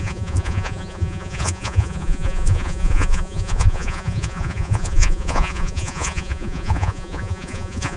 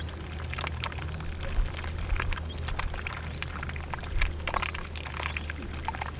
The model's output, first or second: first